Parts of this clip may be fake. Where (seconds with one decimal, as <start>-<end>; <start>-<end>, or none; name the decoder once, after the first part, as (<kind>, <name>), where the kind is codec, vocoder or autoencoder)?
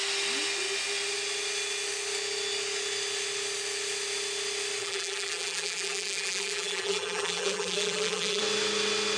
4.8-8.4 (vocoder, BigVGAN v2)